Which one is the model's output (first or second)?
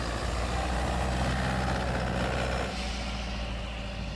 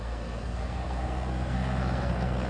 second